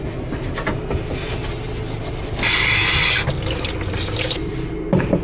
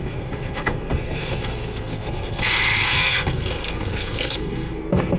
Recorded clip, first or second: first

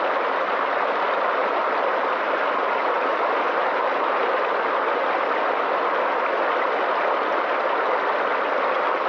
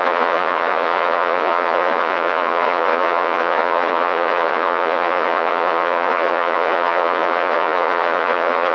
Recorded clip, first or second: first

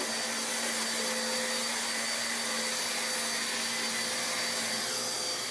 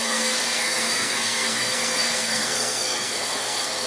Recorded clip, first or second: first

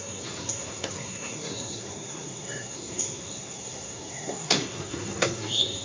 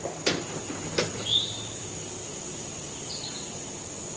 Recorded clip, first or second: second